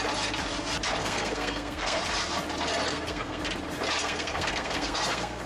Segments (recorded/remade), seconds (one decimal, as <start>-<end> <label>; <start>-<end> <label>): 0.0-1.0 recorded; 1.0-2.0 remade; 2.0-2.9 recorded; 2.9-3.4 remade; 3.4-4.0 recorded; 4.0-5.5 remade